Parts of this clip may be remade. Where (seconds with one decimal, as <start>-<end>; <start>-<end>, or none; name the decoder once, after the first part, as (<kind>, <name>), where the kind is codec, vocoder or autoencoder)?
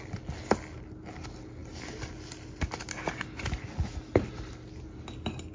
none